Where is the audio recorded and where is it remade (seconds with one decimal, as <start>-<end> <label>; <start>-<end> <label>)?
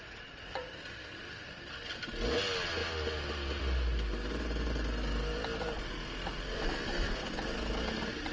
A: 0.0-0.7 remade; 0.7-8.3 recorded